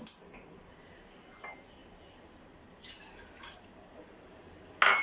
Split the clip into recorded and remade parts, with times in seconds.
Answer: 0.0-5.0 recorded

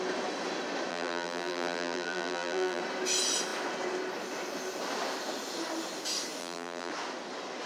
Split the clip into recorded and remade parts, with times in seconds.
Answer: 0.0-0.9 recorded; 0.9-2.8 remade; 2.8-6.4 recorded; 6.4-6.9 remade; 6.9-7.7 recorded

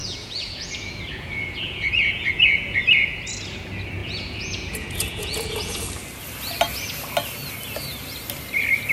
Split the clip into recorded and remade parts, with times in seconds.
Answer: 0.0-3.2 remade; 3.2-4.0 recorded; 4.0-5.8 remade; 5.8-8.9 recorded

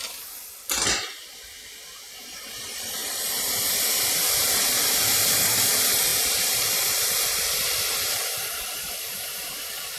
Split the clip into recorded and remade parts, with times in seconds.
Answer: 0.0-6.1 recorded; 6.1-9.5 remade; 9.5-10.0 recorded

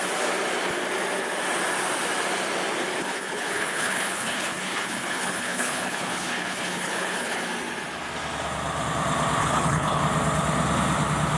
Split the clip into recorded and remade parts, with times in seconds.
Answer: 0.0-3.0 recorded; 3.0-7.4 remade; 7.4-9.4 recorded; 9.4-10.0 remade; 10.0-11.4 recorded

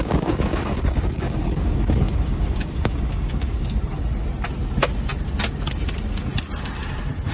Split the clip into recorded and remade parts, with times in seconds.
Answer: 0.0-3.8 remade; 3.8-7.3 recorded

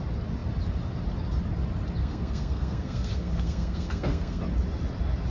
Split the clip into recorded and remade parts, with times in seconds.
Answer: 0.0-2.0 recorded; 2.0-4.4 remade; 4.4-5.3 recorded